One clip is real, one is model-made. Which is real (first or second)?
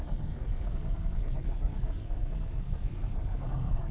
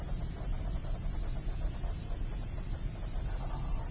second